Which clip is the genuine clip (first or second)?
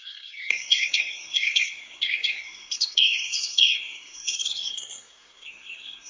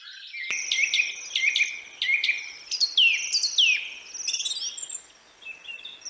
second